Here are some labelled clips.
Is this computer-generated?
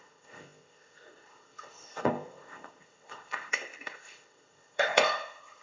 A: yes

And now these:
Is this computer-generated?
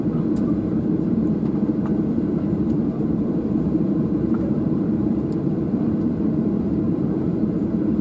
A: yes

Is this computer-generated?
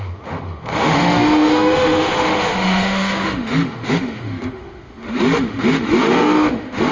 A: yes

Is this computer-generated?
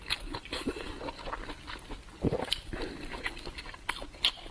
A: no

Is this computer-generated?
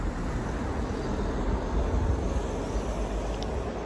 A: no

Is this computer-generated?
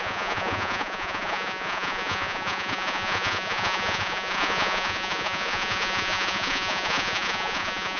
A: yes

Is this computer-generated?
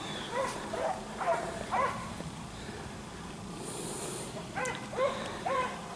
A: yes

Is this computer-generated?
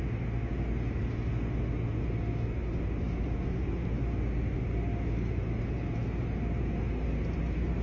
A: no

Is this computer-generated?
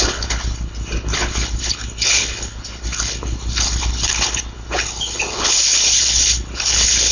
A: yes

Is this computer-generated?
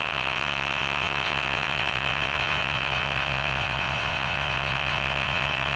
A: yes